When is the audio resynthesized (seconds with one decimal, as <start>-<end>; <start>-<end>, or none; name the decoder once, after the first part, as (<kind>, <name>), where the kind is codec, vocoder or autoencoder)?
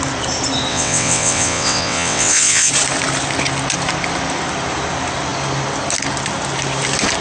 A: 0.7-2.7 (vocoder, WaveNeXt)